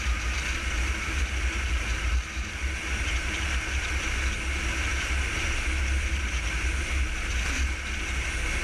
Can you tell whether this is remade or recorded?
recorded